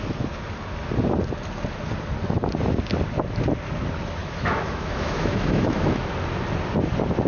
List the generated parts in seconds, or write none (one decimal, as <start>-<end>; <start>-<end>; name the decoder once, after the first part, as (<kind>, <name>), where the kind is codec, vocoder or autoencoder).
4.2-6.1 (autoencoder, DAC-VAE)